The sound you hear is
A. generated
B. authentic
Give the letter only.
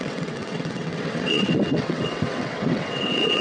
A